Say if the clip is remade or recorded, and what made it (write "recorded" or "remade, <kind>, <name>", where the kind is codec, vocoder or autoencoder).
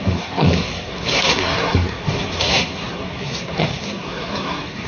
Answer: remade, codec, SNAC